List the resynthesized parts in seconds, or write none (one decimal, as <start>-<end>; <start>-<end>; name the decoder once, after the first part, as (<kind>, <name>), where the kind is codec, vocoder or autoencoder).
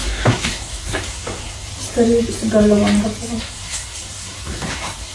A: 0.0-1.7 (codec, SNAC); 3.4-5.1